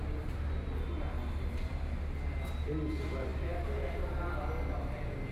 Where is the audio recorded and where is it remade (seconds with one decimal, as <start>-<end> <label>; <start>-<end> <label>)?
0.0-5.3 recorded